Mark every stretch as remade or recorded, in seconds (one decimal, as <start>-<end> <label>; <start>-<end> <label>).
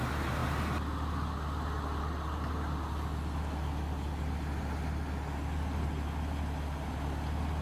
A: 0.0-7.6 recorded